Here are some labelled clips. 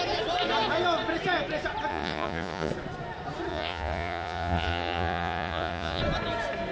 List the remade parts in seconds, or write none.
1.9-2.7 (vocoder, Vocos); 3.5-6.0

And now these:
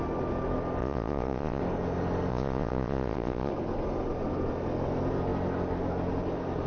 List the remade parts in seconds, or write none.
0.8-1.6 (vocoder, Vocos); 2.3-3.5

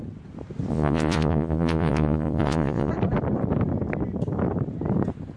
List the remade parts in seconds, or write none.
0.7-2.9 (vocoder, Vocos)

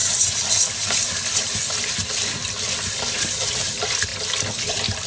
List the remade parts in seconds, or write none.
none